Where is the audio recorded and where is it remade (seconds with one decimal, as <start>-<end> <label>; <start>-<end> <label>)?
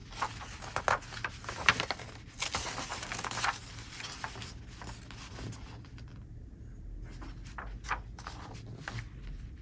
0.0-9.6 recorded